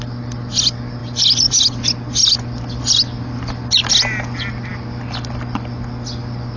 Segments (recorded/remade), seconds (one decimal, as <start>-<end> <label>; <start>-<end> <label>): 0.0-6.6 recorded